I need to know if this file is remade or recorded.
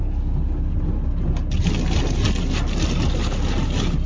recorded